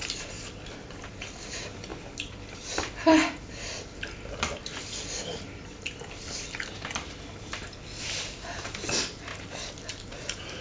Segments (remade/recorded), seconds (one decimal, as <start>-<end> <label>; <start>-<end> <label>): 0.0-1.9 remade; 1.9-2.6 recorded; 2.6-9.3 remade; 9.3-9.9 recorded; 9.9-10.6 remade